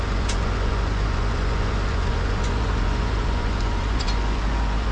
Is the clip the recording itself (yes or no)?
no